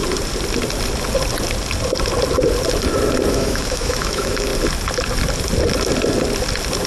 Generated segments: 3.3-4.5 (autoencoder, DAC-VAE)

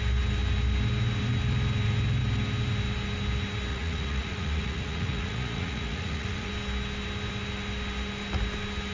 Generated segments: 3.7-6.5 (vocoder, Vocos)

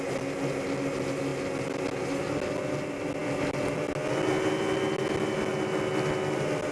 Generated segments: none

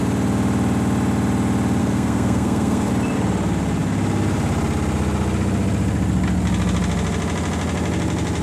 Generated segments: 1.8-2.9 (codec, SNAC)

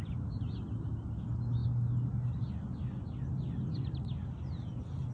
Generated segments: none